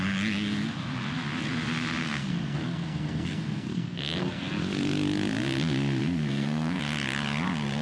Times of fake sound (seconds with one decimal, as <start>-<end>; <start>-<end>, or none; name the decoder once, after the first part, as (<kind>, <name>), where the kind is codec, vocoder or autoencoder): 2.0-4.4 (codec, SNAC); 6.0-6.8